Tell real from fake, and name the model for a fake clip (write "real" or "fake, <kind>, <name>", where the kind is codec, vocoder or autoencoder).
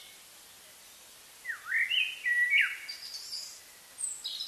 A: real